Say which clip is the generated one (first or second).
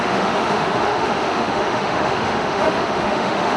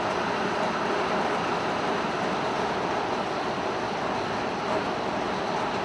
first